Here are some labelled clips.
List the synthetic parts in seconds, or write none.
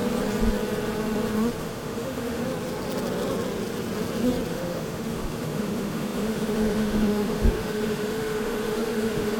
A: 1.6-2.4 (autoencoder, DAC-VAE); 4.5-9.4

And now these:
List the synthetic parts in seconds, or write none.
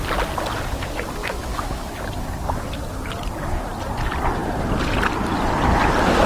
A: 1.2-1.9 (autoencoder, DAC-VAE)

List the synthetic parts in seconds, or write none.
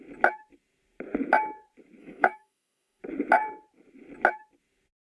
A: 2.0-3.0 (autoencoder, DAC-VAE)